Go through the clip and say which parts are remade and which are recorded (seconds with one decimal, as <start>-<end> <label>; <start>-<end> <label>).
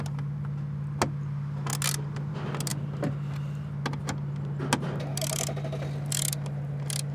0.0-7.1 recorded